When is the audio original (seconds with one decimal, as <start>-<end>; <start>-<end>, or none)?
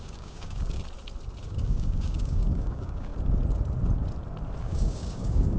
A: 0.8-1.4; 3.1-4.6